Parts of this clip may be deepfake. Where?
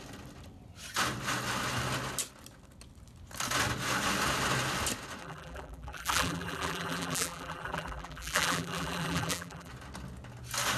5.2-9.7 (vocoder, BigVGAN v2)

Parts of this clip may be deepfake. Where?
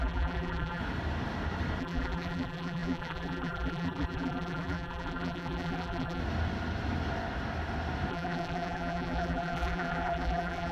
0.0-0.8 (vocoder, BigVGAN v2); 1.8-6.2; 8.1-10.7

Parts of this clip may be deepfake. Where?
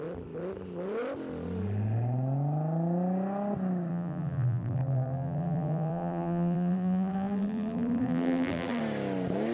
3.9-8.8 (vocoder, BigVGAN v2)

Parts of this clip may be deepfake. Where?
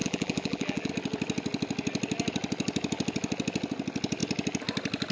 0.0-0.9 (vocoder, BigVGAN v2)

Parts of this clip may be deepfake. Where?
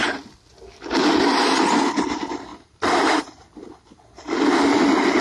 2.5-3.2 (vocoder, BigVGAN v2)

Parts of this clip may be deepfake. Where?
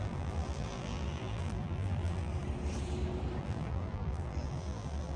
0.0-2.3 (vocoder, BigVGAN v2); 3.4-5.2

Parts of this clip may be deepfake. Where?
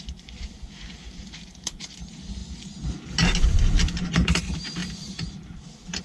0.0-2.4 (vocoder, BigVGAN v2); 4.1-6.0